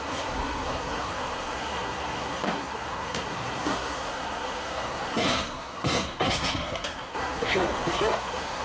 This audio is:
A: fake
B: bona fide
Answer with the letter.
A